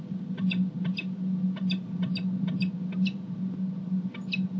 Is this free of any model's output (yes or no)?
yes